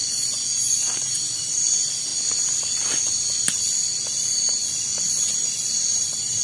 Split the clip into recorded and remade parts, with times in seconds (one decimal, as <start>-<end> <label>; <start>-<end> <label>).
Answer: 0.0-1.2 remade; 1.2-6.4 recorded